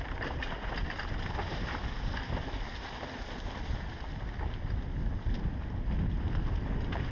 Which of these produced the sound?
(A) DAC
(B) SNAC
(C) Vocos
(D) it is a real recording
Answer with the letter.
D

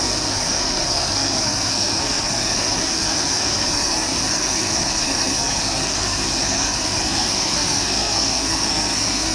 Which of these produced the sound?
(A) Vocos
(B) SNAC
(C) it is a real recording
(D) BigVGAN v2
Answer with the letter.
B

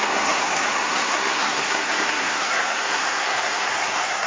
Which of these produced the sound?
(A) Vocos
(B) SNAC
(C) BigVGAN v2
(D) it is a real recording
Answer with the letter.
B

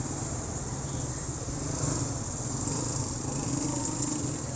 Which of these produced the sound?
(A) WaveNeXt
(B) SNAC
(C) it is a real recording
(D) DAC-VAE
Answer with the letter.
C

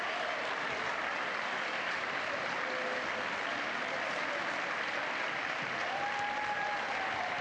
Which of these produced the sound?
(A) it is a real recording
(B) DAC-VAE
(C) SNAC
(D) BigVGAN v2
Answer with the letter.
A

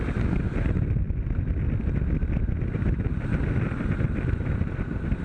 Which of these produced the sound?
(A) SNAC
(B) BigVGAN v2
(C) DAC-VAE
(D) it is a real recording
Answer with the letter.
D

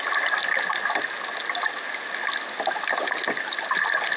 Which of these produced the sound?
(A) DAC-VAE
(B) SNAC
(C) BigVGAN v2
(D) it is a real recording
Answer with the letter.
D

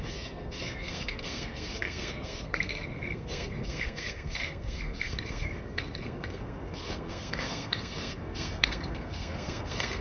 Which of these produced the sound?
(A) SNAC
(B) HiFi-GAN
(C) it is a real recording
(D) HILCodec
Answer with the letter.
A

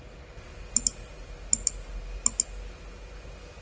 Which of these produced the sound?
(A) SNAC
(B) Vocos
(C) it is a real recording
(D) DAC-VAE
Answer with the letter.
C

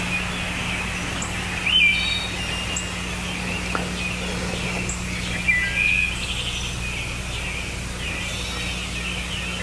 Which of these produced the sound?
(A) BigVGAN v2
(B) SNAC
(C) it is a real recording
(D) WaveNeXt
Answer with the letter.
C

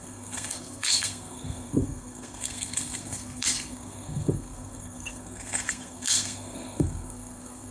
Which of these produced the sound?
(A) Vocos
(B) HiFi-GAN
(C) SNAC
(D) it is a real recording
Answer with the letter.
C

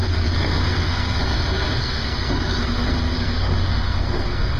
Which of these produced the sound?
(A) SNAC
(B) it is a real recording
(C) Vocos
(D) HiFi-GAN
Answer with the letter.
A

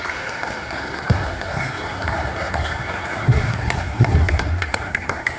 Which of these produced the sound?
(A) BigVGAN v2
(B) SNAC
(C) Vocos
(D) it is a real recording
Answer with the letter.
B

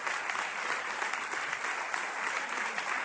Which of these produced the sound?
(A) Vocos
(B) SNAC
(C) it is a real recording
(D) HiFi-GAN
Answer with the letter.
C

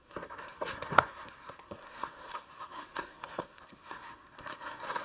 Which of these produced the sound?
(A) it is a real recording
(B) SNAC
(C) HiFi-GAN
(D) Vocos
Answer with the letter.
B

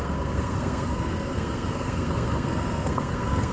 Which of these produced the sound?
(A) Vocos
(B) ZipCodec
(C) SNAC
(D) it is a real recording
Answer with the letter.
C